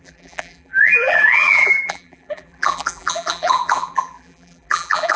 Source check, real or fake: fake